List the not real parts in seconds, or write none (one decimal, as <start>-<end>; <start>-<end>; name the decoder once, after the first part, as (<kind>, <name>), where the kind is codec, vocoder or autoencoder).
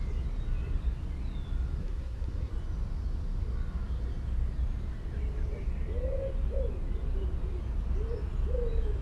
1.8-2.5 (codec, SNAC)